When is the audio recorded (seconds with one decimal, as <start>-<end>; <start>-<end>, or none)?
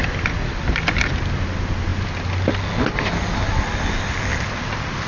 0.0-5.1